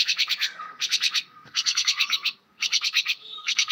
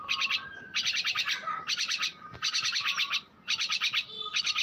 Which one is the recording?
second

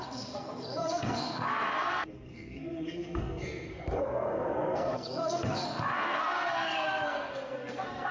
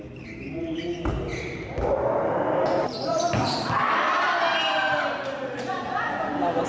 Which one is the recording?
second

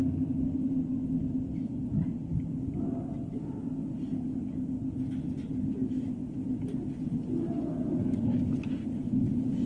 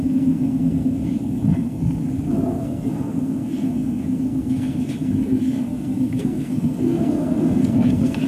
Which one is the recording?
first